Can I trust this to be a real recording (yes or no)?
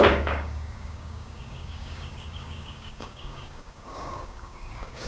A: no